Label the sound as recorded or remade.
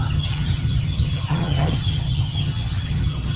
remade